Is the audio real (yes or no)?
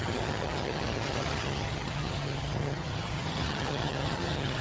no